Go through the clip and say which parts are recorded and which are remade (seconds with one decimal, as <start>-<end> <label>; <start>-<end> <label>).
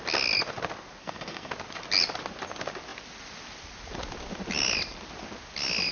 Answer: 0.0-1.0 recorded; 1.0-1.5 remade; 1.5-5.9 recorded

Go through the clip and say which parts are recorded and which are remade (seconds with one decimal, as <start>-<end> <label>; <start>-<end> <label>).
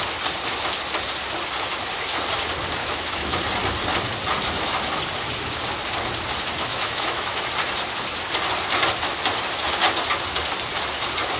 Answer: 0.0-2.8 recorded; 2.8-3.4 remade; 3.4-6.7 recorded; 6.7-7.4 remade; 7.4-11.4 recorded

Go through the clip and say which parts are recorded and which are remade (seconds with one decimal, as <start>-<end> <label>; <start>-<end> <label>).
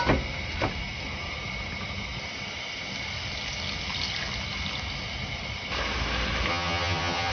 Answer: 0.0-6.5 recorded; 6.5-7.3 remade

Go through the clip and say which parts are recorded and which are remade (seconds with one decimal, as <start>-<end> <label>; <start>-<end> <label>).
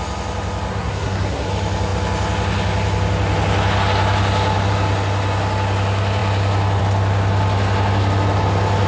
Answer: 0.0-0.7 recorded; 0.7-1.5 remade; 1.5-8.9 recorded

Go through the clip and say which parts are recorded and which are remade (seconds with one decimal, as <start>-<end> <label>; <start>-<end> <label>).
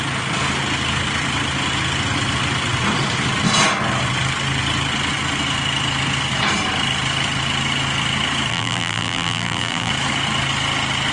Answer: 0.0-8.5 recorded; 8.5-9.9 remade; 9.9-11.1 recorded